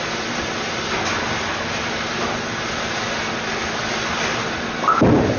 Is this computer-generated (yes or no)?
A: no